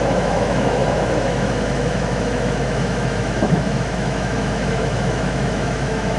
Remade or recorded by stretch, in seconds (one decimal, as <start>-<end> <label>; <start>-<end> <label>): 0.0-6.2 remade